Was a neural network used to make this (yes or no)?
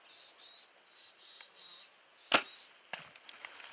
no